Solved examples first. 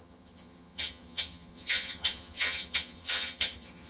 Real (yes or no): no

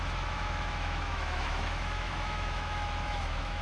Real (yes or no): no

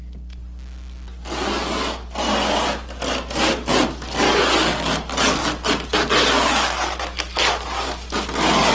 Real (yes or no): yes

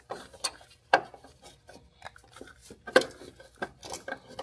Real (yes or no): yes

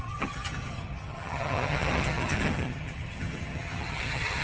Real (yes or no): no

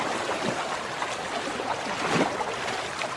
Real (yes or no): yes